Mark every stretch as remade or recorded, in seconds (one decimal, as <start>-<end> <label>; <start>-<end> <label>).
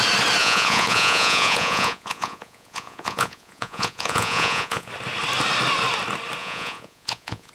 0.0-0.4 recorded; 0.4-4.9 remade; 4.9-6.4 recorded; 6.4-7.5 remade